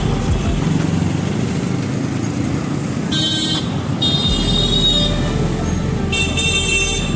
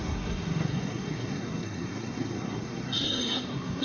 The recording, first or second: first